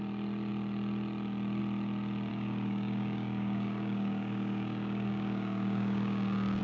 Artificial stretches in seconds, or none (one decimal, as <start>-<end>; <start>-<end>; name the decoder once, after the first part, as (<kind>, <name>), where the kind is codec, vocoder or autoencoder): 2.3-6.6 (codec, DAC)